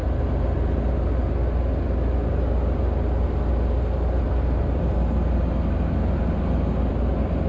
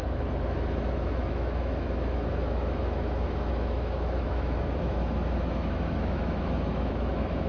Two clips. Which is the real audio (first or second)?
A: first